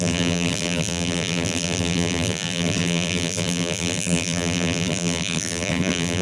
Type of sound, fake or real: fake